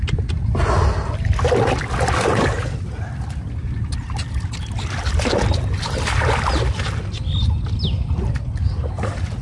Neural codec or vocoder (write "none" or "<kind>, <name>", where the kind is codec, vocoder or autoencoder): none